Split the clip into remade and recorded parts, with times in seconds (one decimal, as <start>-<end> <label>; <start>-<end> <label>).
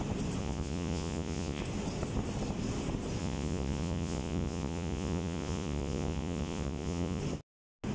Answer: 0.0-0.4 recorded; 0.4-1.6 remade; 1.6-3.2 recorded; 3.2-7.2 remade; 7.2-7.9 recorded